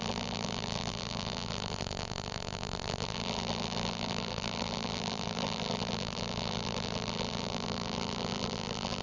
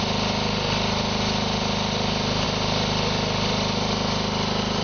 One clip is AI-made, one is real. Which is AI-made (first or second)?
first